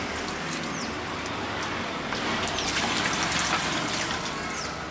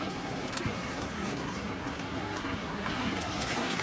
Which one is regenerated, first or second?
second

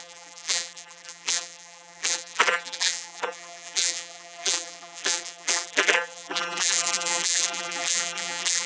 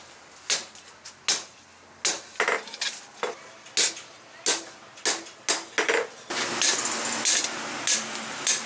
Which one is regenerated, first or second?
first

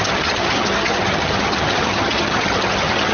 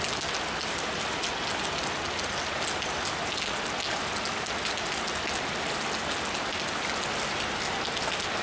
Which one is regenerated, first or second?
first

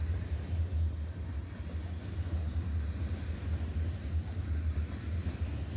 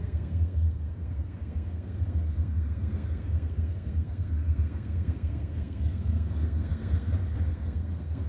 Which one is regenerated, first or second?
second